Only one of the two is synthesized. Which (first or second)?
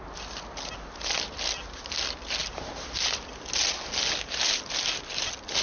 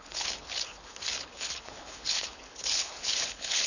second